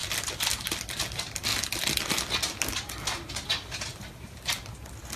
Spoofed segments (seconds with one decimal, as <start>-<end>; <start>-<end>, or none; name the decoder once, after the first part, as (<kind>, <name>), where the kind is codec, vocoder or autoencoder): 3.9-4.5 (vocoder, BigVGAN v2)